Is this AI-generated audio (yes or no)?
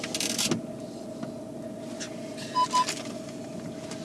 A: no